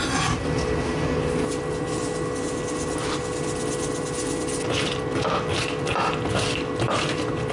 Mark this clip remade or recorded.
recorded